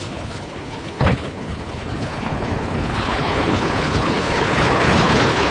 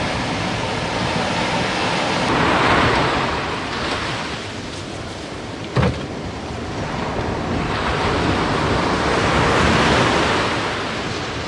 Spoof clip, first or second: first